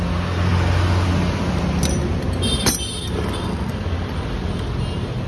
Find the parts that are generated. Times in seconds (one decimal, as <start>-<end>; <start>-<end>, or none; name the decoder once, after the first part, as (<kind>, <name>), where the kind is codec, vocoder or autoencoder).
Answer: none